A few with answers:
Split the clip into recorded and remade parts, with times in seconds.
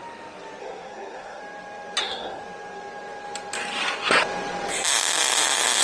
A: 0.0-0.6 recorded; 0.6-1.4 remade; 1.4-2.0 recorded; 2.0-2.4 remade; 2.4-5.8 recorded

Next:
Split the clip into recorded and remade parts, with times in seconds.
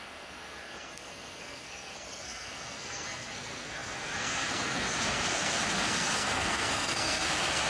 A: 0.0-7.7 remade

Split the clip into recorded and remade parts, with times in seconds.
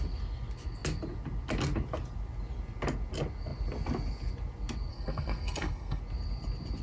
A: 0.0-4.9 recorded; 4.9-6.0 remade; 6.0-6.8 recorded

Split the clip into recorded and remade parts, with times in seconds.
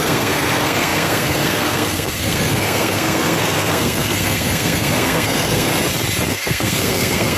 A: 0.0-5.7 remade; 5.7-6.3 recorded; 6.3-7.4 remade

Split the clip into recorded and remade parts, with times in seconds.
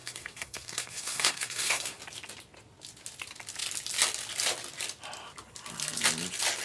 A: 0.0-2.0 remade; 2.0-6.6 recorded